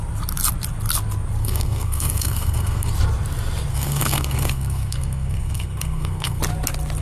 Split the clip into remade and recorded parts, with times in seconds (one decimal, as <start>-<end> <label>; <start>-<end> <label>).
0.0-1.4 recorded; 1.4-2.9 remade; 2.9-3.7 recorded; 3.7-6.4 remade; 6.4-7.0 recorded